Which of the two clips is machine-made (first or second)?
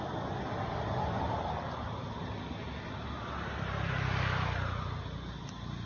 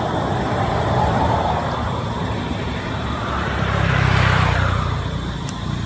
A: second